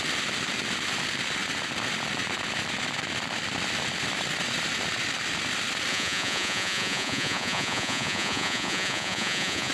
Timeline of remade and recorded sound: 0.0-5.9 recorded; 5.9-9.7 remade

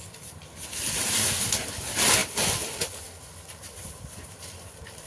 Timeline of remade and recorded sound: 0.0-2.2 recorded; 2.2-3.0 remade; 3.0-5.1 recorded

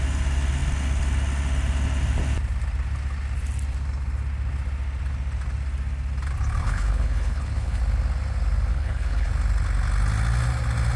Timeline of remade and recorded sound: 0.0-6.6 recorded; 6.6-7.8 remade; 7.8-8.7 recorded; 8.7-9.3 remade; 9.3-11.0 recorded

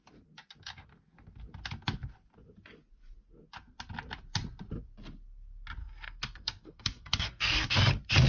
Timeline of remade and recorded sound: 0.0-5.8 recorded; 5.8-7.7 remade; 7.7-8.3 recorded

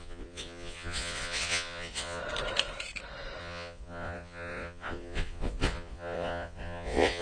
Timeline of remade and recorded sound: 0.0-2.2 remade; 2.2-3.4 recorded; 3.4-7.2 remade

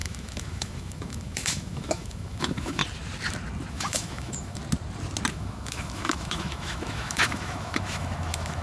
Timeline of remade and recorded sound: 0.0-2.8 remade; 2.8-3.7 recorded; 3.7-4.6 remade; 4.6-5.3 recorded; 5.3-8.6 remade

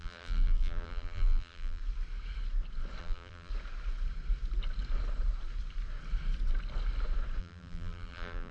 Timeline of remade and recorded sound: 0.0-1.8 remade; 1.8-3.0 recorded; 3.0-3.5 remade; 3.5-7.4 recorded; 7.4-8.5 remade